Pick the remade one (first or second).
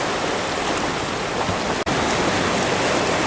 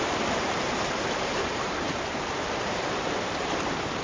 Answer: second